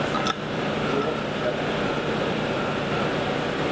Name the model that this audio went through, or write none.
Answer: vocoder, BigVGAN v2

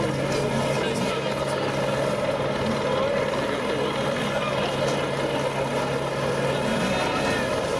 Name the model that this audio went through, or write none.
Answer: none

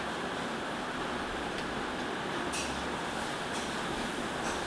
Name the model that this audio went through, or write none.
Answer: none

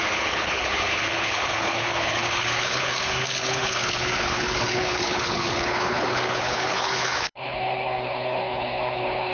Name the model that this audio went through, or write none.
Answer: codec, HILCodec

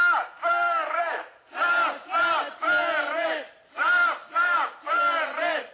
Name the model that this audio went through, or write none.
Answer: none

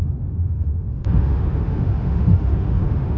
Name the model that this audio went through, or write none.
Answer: autoencoder, DAC-VAE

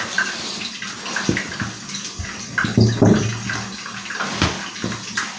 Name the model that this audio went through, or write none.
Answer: none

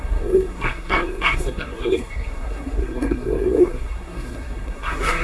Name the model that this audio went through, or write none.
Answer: codec, SNAC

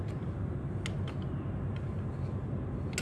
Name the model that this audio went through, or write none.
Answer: none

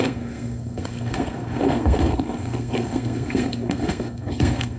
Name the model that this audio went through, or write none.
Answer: codec, SNAC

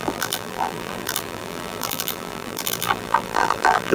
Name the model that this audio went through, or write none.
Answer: vocoder, BigVGAN v2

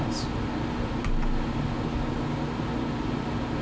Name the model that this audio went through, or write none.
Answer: none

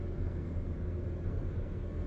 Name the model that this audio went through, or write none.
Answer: codec, SNAC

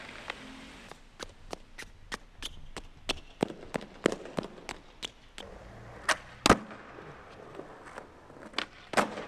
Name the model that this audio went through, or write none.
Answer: none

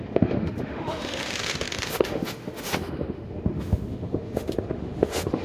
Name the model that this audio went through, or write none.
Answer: autoencoder, DAC-VAE